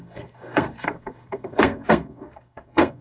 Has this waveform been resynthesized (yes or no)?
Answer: yes